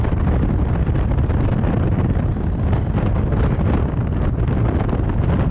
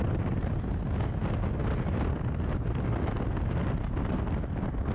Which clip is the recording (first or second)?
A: second